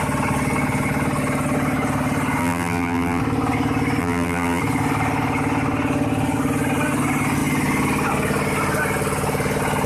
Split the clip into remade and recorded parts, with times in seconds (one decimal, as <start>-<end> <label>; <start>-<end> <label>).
0.0-2.4 recorded; 2.4-3.2 remade; 3.2-4.0 recorded; 4.0-4.6 remade; 4.6-9.9 recorded